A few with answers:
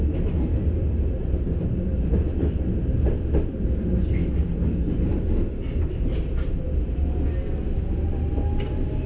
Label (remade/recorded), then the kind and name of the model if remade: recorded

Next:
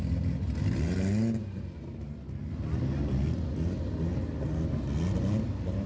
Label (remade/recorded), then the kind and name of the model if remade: recorded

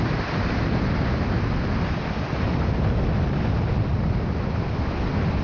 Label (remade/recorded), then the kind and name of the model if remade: recorded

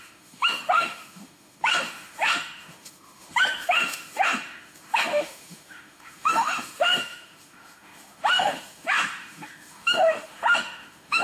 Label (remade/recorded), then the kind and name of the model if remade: remade, autoencoder, DAC-VAE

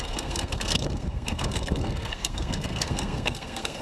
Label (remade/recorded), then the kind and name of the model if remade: remade, codec, SNAC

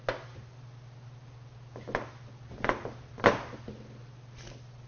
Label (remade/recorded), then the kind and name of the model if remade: recorded